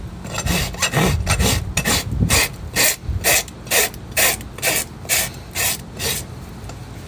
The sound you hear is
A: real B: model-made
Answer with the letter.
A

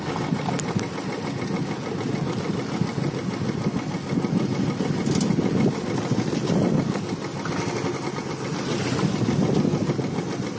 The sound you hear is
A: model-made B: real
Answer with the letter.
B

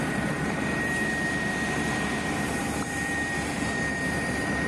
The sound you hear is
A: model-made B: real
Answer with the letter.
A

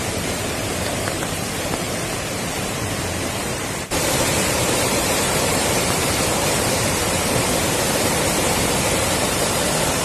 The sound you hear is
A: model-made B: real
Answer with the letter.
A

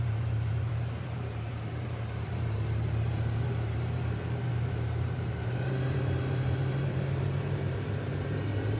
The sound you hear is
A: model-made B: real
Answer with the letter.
A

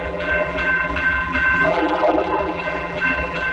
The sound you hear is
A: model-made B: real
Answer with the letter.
A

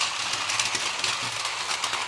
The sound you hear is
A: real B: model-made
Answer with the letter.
A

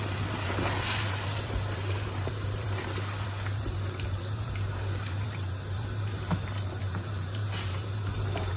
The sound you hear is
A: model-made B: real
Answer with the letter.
A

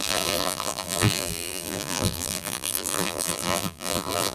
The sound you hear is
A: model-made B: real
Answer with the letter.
A